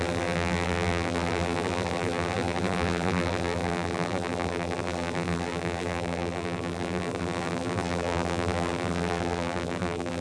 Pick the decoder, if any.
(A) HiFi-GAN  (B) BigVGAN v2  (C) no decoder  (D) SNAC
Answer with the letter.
B